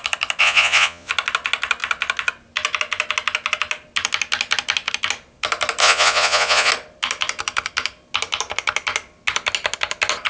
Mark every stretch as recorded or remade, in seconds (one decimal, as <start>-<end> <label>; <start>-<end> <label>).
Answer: 0.0-0.4 recorded; 0.4-1.1 remade; 1.1-5.8 recorded; 5.8-6.7 remade; 6.7-10.3 recorded